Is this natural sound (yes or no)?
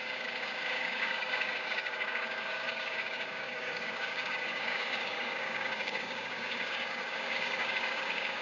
no